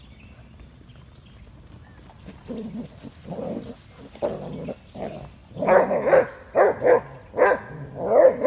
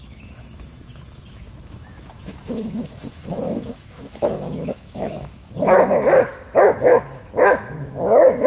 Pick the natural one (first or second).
first